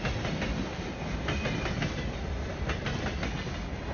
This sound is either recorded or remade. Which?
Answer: recorded